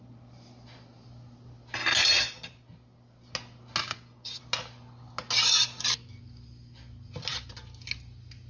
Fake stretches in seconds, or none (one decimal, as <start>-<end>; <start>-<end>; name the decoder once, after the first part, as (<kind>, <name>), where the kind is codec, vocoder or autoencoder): 3.8-4.4 (codec, DAC)